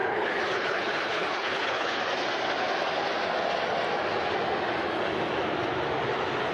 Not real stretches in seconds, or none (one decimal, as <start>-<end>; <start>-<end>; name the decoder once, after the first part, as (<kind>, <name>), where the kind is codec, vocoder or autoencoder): 0.0-2.0 (codec, HILCodec)